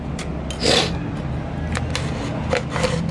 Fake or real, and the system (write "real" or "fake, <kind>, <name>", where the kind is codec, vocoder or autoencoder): real